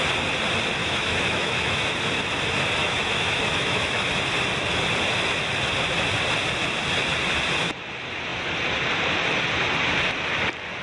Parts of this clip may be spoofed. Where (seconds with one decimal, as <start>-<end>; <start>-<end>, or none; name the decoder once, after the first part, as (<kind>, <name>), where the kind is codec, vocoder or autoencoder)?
0.8-1.9 (autoencoder, DAC-VAE); 2.8-4.1